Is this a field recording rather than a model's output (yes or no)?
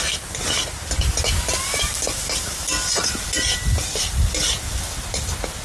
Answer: yes